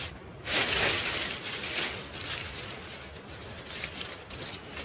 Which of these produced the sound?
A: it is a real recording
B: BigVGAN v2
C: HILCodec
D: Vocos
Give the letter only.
A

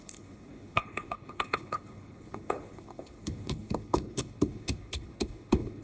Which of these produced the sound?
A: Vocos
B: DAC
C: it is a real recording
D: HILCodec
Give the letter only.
D